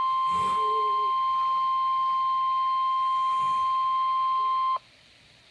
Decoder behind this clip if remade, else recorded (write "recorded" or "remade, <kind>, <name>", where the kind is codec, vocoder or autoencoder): recorded